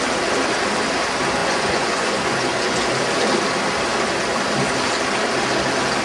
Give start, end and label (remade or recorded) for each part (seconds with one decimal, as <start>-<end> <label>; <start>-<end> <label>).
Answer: 0.0-1.4 recorded; 1.4-2.8 remade; 2.8-6.0 recorded